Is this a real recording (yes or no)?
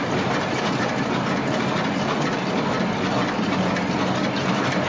yes